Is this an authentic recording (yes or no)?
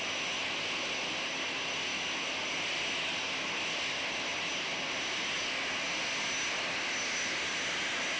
yes